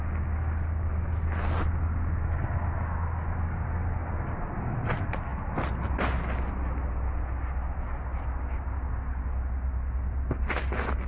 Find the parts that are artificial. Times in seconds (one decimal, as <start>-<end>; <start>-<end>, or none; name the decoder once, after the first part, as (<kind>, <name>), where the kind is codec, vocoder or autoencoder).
none